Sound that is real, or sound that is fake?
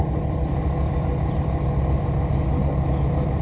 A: real